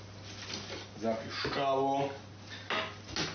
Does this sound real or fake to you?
real